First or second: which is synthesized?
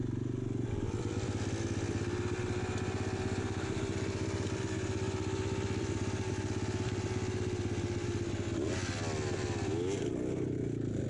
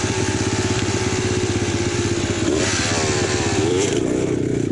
second